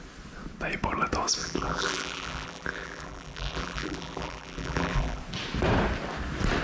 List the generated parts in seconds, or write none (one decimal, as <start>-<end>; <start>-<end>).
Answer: 1.4-5.2